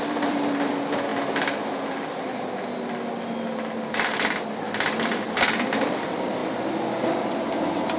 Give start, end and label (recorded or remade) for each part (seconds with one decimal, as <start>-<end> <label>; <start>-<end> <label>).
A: 0.0-1.1 remade; 1.1-5.9 recorded; 5.9-6.4 remade; 6.4-7.5 recorded; 7.5-8.0 remade